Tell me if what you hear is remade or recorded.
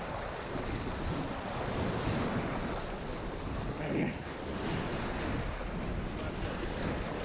recorded